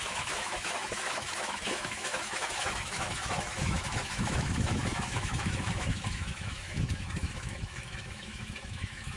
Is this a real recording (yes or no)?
no